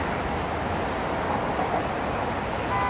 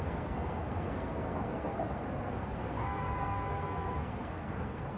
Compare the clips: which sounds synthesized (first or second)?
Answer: second